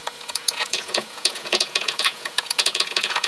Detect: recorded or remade remade